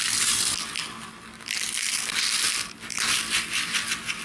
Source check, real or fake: real